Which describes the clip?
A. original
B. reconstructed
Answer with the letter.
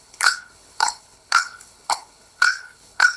B